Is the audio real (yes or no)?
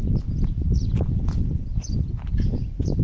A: yes